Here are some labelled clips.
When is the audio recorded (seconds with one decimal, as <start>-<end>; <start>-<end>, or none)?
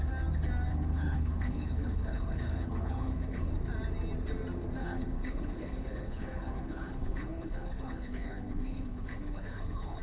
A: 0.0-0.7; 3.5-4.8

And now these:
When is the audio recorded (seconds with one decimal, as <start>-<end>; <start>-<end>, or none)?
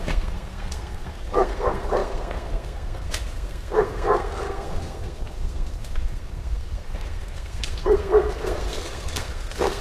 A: none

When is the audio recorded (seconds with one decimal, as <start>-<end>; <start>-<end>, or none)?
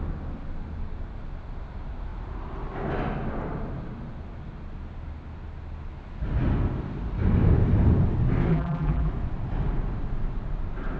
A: 0.0-8.5; 9.1-11.0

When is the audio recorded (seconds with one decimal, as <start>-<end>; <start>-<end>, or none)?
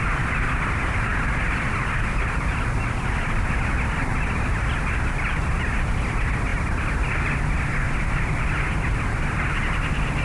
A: 0.0-10.2